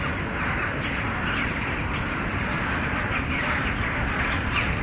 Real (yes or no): yes